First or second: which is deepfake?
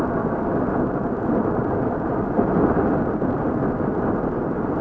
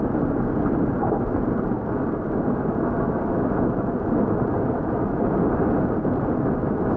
first